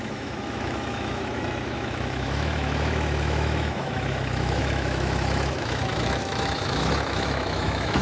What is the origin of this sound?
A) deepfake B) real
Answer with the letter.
A